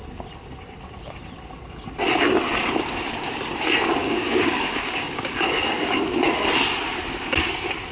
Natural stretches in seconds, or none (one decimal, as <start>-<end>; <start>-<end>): 0.0-4.0; 6.0-7.9